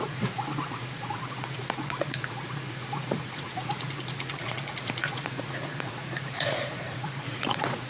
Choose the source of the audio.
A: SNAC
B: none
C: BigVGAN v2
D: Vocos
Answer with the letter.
D